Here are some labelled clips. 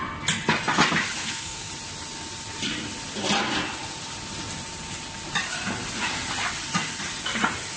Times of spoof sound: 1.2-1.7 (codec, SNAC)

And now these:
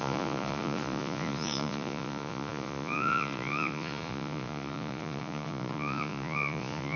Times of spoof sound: 0.0-7.0 (vocoder, Vocos)